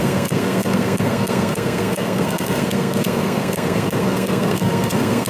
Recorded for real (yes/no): no